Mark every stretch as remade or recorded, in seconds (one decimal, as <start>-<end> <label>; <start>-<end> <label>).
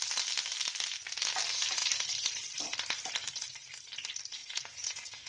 0.0-4.4 recorded; 4.4-5.3 remade